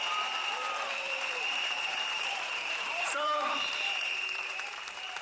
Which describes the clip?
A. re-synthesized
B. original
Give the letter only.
A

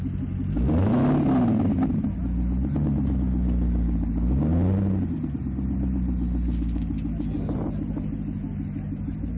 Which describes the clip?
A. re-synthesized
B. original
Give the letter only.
B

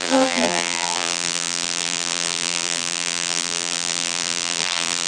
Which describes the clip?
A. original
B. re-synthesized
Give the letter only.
B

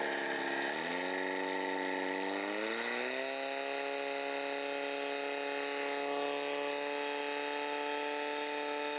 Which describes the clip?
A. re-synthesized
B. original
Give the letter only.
B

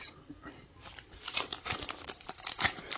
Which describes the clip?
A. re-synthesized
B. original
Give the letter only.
A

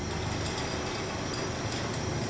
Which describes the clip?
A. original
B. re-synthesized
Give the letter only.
A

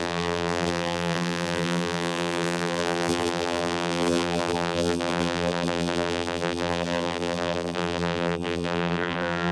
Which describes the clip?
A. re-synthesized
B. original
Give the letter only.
A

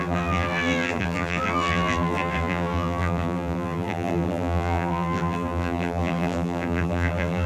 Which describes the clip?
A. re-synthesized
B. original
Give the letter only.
A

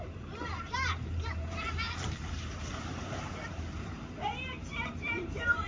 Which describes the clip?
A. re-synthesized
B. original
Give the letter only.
A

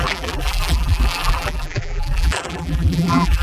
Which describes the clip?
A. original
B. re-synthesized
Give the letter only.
B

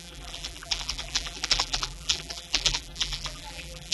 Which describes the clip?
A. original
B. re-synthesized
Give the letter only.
B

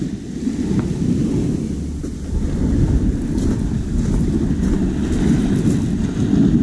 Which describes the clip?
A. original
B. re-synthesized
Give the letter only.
A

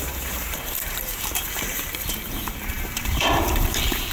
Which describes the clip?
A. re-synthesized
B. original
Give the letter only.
A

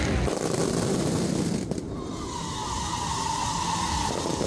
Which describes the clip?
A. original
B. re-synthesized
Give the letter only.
A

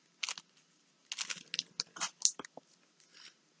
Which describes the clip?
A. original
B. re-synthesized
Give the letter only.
A